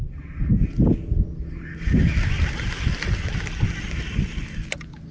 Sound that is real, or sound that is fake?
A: real